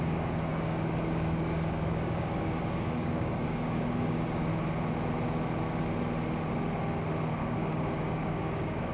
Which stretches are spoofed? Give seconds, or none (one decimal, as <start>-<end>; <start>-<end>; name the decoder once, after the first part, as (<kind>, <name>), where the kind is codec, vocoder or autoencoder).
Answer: 0.0-4.5 (codec, DAC); 7.4-8.9

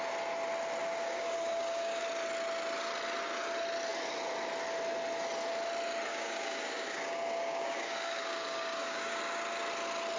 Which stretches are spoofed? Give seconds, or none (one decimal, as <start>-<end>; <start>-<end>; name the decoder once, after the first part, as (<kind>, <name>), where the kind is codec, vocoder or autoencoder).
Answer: 0.8-2.0 (codec, DAC); 6.1-9.2

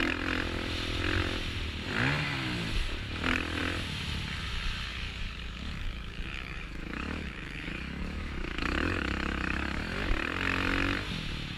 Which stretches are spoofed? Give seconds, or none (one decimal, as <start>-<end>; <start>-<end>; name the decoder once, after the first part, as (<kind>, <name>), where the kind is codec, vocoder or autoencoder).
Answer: 4.9-9.8 (codec, DAC)

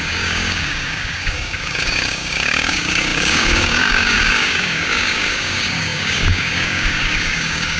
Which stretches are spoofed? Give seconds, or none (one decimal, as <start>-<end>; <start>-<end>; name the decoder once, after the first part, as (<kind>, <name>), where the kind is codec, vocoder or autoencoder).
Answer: 0.0-7.8 (codec, DAC)

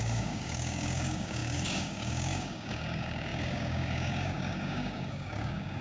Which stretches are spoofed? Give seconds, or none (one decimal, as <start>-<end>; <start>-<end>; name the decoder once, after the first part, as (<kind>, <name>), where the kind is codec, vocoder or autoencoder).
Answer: 0.0-5.8 (codec, DAC)

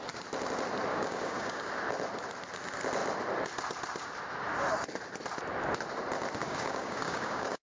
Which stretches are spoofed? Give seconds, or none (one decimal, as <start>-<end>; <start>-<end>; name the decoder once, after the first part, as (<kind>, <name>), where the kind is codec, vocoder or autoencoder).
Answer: 0.9-1.7 (codec, DAC); 6.4-7.7

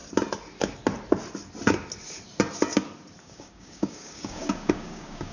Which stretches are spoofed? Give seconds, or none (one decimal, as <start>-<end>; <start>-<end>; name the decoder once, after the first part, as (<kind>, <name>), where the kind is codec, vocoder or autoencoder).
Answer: 3.2-5.3 (codec, DAC)